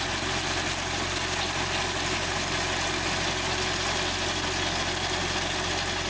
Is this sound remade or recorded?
recorded